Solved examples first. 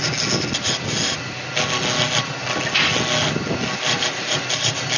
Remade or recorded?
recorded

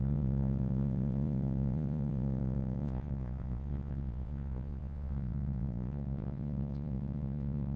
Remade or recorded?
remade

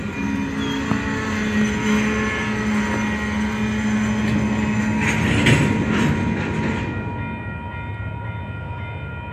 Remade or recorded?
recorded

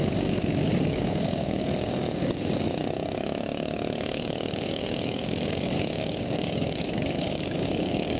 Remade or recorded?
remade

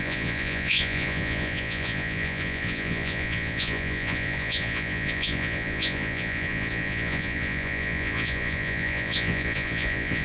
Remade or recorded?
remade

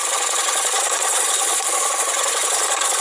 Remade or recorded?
remade